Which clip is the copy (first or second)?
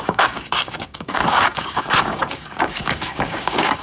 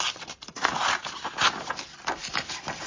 first